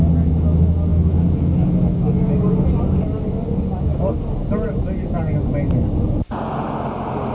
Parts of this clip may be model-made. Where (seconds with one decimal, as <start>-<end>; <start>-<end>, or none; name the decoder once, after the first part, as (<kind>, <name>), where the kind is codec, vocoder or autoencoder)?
0.9-2.3 (autoencoder, DAC-VAE)